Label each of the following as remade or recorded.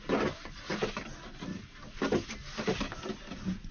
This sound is recorded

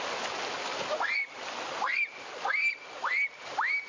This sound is recorded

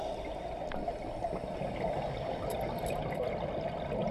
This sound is recorded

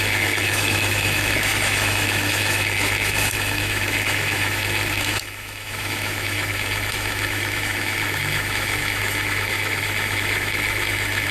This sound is remade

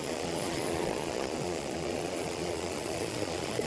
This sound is remade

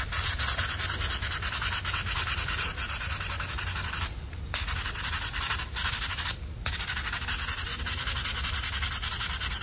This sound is recorded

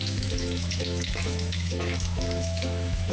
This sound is remade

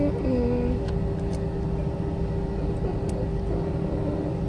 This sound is recorded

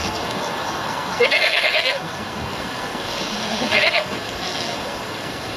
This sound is remade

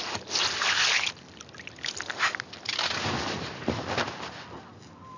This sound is recorded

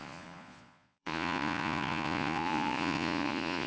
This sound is remade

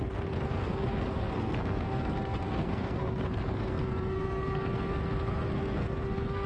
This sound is remade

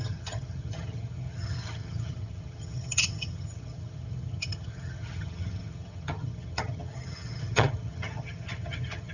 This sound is remade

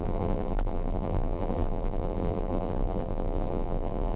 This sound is remade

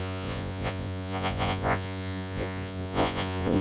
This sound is remade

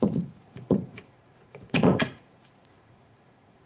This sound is remade